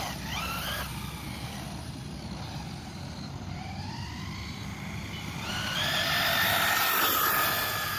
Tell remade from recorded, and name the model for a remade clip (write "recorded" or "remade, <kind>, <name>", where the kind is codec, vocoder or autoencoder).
recorded